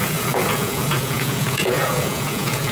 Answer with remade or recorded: remade